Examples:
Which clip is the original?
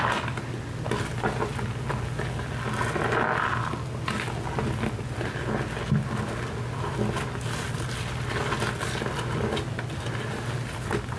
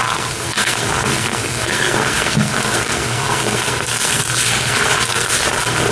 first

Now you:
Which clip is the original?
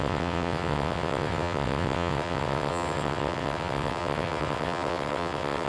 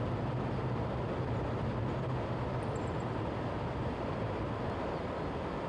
second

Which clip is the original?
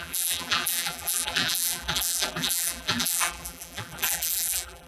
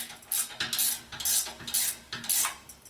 second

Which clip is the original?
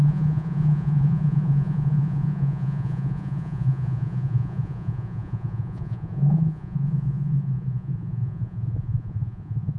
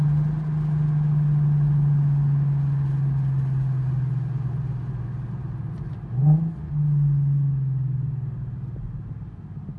second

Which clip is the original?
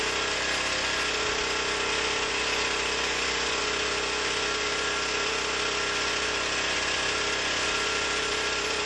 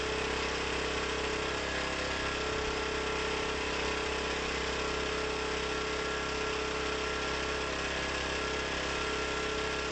second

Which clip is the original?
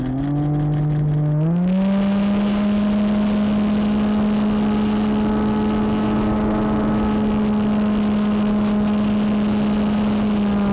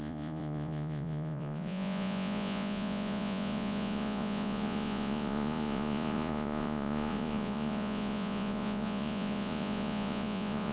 first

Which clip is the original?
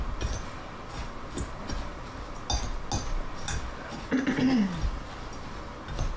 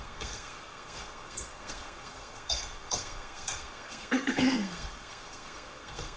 first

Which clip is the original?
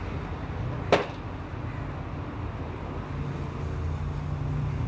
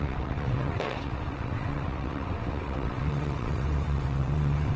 first